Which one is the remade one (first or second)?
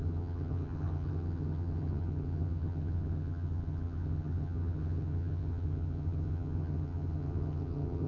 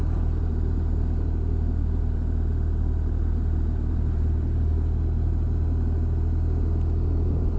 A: first